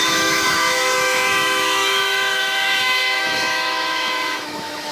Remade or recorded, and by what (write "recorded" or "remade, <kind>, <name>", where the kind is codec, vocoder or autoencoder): remade, autoencoder, DAC-VAE